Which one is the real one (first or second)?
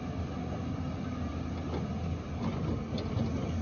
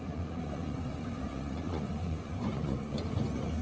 first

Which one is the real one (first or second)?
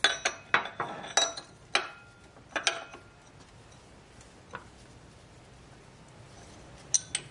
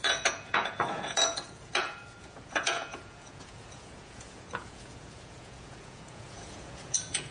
first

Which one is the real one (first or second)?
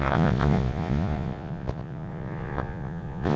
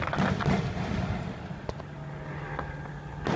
second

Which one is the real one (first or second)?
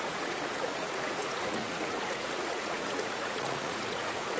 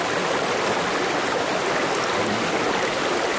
second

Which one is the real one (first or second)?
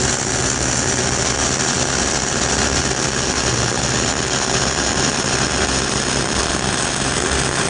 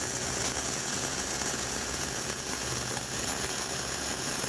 first